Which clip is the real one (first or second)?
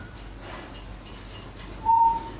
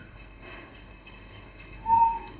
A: first